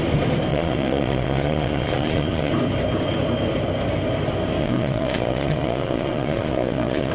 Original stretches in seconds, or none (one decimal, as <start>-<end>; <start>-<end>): 0.0-0.5; 2.5-4.6